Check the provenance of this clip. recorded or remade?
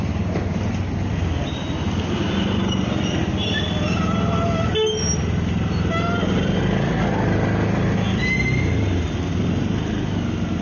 recorded